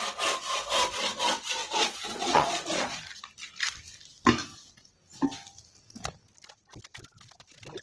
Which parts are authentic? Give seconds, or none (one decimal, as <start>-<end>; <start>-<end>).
0.0-1.6; 3.0-7.8